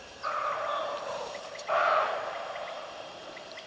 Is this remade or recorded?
remade